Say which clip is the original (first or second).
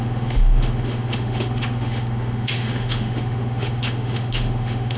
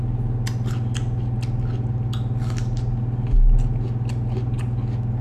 second